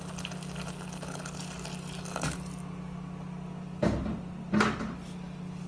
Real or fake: real